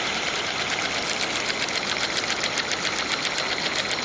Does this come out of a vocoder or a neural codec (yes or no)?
no